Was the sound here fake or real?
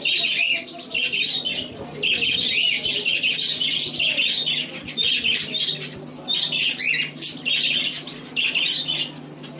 real